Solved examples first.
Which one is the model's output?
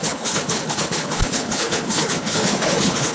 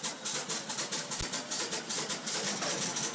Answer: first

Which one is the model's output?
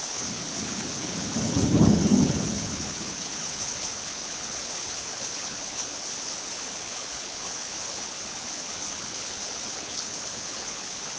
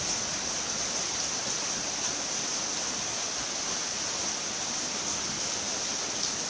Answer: first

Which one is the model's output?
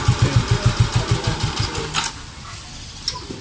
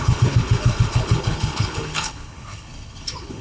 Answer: second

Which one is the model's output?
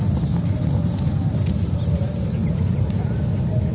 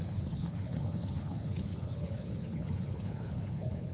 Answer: second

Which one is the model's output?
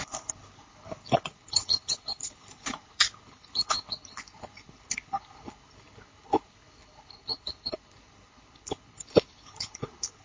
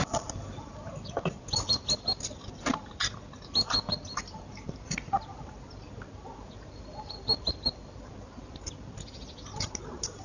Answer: first